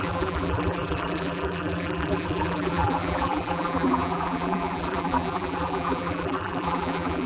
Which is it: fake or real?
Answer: fake